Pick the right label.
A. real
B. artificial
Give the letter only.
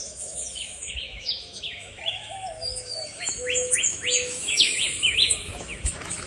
B